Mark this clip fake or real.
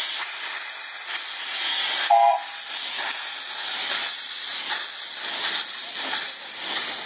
real